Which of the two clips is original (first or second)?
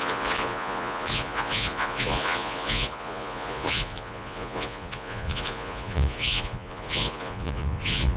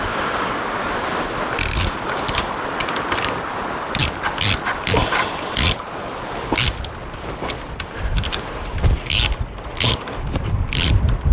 second